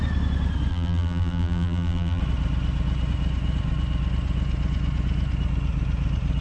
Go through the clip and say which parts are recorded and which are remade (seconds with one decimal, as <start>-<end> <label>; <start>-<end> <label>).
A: 0.0-0.7 recorded; 0.7-2.2 remade; 2.2-6.4 recorded